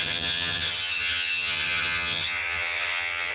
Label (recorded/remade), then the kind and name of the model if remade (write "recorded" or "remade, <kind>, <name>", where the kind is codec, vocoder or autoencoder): remade, vocoder, HiFi-GAN